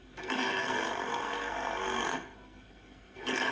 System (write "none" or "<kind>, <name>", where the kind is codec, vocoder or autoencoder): codec, SNAC